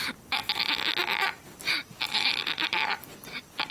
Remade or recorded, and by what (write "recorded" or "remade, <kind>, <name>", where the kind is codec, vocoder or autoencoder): recorded